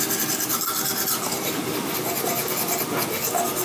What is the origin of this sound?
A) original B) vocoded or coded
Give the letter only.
A